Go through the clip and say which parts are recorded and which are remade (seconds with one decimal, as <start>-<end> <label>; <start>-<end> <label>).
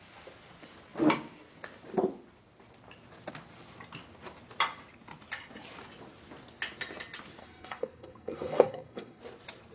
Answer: 0.0-7.4 recorded; 7.4-9.2 remade; 9.2-9.7 recorded